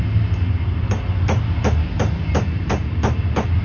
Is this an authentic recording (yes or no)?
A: yes